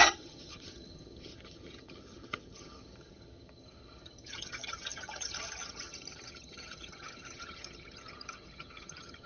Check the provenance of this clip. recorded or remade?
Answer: remade